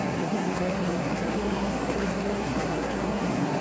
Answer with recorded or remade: remade